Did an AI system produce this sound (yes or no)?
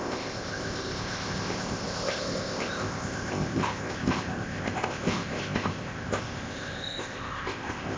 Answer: yes